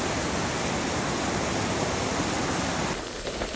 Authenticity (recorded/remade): recorded